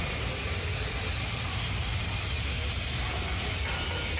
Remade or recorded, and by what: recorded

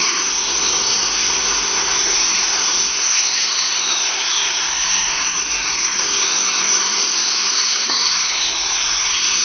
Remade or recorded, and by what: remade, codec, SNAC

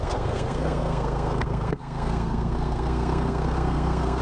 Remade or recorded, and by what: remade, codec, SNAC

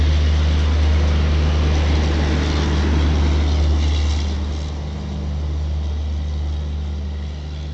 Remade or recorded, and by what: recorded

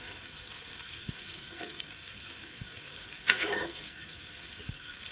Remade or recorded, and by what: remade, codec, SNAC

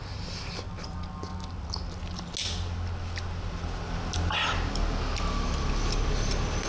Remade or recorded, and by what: recorded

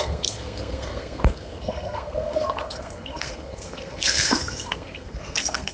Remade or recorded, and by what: remade, codec, SNAC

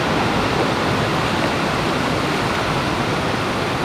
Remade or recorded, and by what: recorded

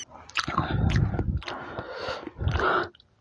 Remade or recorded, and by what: recorded